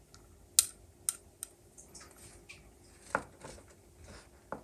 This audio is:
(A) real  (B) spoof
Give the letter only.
A